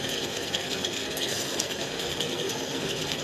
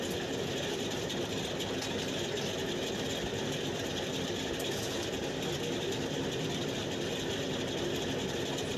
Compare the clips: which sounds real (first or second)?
second